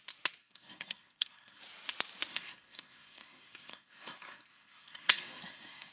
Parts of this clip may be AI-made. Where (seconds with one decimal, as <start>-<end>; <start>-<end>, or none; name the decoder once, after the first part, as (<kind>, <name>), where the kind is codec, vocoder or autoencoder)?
0.4-1.6 (codec, SNAC); 2.3-5.9